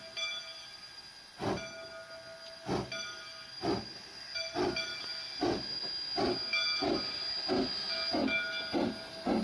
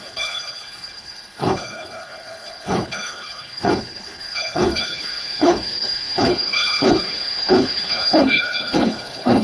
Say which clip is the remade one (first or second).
second